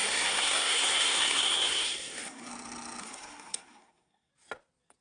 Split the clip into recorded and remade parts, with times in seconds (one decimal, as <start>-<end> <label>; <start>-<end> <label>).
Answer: 0.0-2.5 remade; 2.5-3.0 recorded; 3.0-4.3 remade; 4.3-5.0 recorded